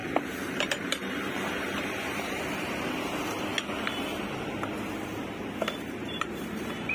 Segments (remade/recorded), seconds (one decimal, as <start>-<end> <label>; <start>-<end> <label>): 0.0-2.4 remade; 2.4-6.9 recorded